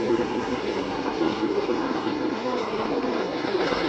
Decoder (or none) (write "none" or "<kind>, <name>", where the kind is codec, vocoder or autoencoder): codec, SNAC